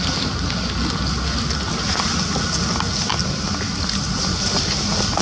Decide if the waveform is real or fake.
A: real